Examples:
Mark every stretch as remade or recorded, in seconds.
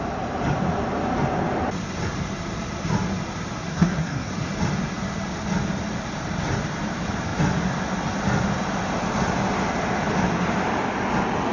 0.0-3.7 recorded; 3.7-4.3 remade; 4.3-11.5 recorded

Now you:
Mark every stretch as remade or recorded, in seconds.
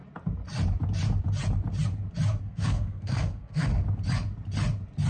0.0-2.4 recorded; 2.4-3.7 remade; 3.7-5.1 recorded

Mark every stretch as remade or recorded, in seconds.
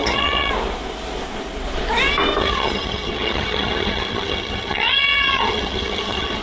0.0-0.5 remade; 0.5-2.4 recorded; 2.4-6.4 remade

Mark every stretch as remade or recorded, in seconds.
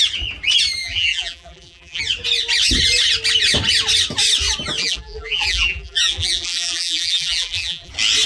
0.0-0.8 recorded; 0.8-2.0 remade; 2.0-4.8 recorded; 4.8-7.9 remade; 7.9-8.3 recorded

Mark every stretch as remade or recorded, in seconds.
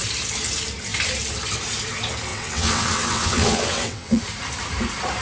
0.0-2.3 recorded; 2.3-4.2 remade; 4.2-5.2 recorded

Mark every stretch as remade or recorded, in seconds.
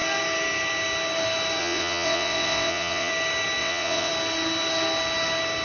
0.0-1.6 recorded; 1.6-3.1 remade; 3.1-3.6 recorded; 3.6-4.1 remade; 4.1-5.6 recorded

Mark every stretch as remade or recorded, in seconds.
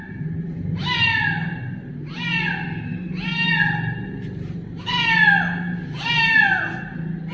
0.0-7.3 recorded